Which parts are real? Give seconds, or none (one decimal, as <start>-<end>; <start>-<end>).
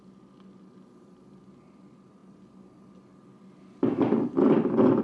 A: 0.0-5.0